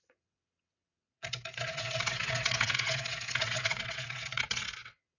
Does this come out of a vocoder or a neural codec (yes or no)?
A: yes